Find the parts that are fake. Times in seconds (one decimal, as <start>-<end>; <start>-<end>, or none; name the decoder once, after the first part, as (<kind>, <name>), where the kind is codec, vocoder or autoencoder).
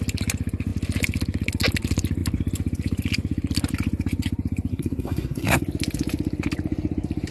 4.7-5.6 (codec, SNAC)